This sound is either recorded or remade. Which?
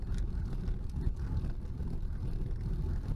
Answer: recorded